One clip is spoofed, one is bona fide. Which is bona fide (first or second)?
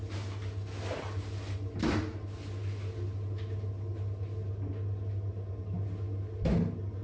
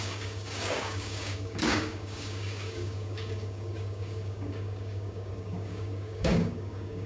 first